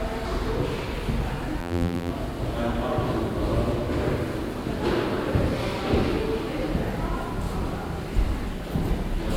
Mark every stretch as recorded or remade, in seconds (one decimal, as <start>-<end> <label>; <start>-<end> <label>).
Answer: 0.0-1.6 recorded; 1.6-2.1 remade; 2.1-9.4 recorded